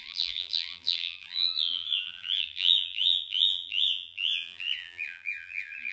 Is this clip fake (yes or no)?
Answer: yes